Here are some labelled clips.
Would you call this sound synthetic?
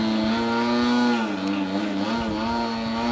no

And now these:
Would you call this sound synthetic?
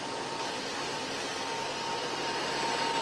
no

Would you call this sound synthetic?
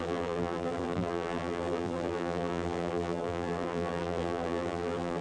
yes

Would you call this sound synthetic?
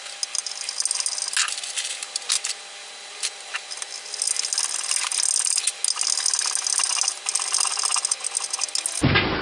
no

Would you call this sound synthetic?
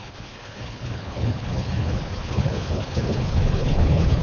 yes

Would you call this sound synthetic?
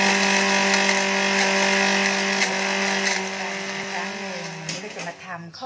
no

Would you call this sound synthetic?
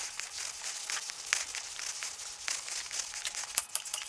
no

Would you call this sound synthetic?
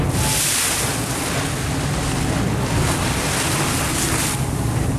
no